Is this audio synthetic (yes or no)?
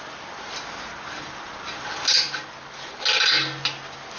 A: no